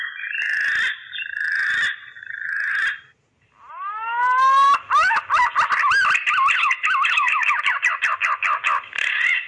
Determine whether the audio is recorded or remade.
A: recorded